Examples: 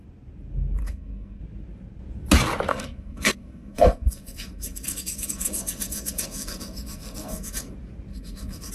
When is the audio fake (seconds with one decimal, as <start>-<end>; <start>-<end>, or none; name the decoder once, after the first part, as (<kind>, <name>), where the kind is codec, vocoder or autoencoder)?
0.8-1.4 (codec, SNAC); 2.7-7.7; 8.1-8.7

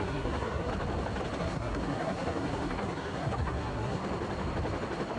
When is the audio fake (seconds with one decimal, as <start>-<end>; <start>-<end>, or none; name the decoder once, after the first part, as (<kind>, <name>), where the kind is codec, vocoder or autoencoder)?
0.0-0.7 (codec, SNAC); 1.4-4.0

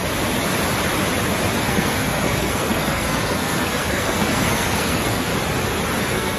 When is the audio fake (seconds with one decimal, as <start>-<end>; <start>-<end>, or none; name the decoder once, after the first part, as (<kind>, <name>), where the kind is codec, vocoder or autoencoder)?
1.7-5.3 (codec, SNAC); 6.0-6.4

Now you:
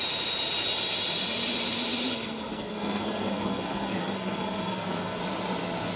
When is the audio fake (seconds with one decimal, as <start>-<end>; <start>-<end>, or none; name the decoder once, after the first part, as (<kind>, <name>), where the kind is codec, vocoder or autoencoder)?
2.1-5.2 (codec, SNAC)